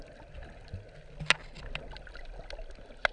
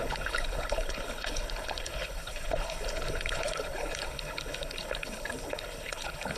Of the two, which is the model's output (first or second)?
second